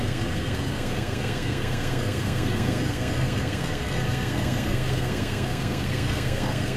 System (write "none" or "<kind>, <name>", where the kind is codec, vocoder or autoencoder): codec, SNAC